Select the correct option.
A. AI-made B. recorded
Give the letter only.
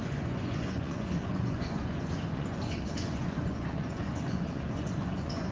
A